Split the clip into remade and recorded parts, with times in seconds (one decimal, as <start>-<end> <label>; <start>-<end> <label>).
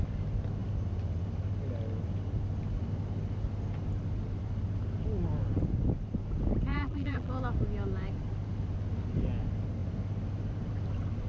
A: 0.0-6.7 recorded; 6.7-7.3 remade; 7.3-11.3 recorded